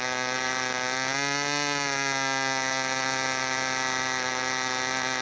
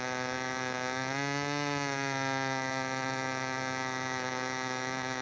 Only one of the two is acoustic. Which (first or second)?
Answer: first